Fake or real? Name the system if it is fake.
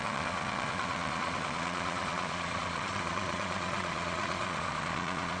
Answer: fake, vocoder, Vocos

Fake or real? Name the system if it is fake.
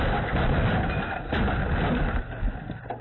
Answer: real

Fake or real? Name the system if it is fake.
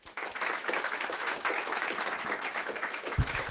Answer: fake, autoencoder, DAC-VAE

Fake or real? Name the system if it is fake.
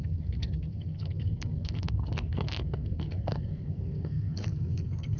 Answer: fake, codec, SNAC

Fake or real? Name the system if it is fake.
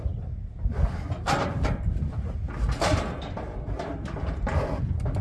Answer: real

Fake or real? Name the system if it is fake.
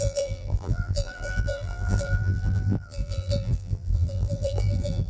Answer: fake, vocoder, BigVGAN v2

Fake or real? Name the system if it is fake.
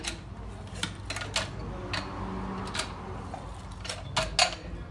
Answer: real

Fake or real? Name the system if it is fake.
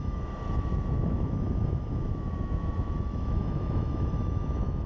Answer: fake, autoencoder, DAC-VAE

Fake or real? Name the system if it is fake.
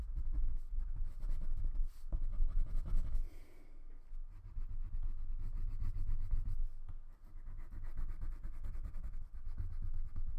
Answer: real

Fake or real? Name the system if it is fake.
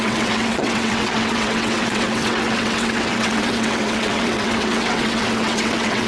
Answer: fake, vocoder, WaveNeXt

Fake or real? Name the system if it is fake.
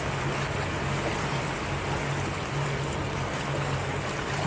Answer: real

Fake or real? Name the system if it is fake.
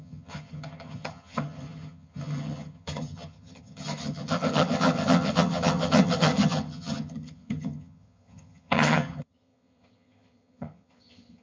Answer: fake, vocoder, HiFi-GAN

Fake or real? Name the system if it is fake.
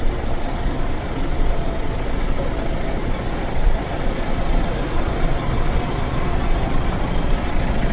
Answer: fake, vocoder, Vocos